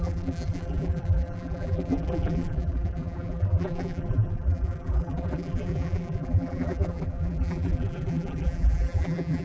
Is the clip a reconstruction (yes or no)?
yes